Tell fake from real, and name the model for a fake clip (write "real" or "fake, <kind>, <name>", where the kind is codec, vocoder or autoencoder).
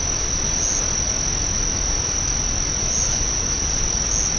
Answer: real